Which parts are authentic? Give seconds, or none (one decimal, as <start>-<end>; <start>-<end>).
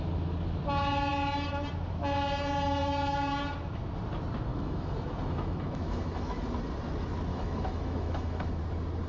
0.0-4.5; 6.4-7.3; 8.6-9.1